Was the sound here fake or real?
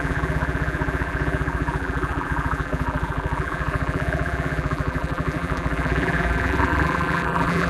fake